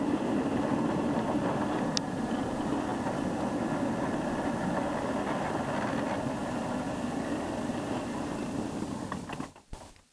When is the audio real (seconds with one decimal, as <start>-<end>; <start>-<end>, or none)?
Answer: 0.0-2.9; 3.5-10.1